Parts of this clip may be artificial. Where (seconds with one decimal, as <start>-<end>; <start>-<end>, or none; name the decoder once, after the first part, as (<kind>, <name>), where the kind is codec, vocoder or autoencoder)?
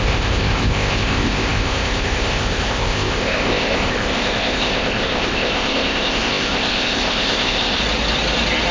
0.0-7.8 (codec, ZipCodec)